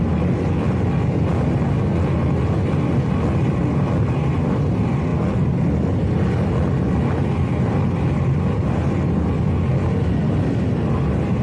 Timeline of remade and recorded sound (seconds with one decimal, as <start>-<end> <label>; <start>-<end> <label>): 0.0-11.4 recorded